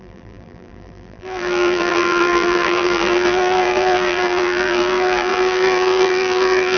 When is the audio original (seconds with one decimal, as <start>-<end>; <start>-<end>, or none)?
none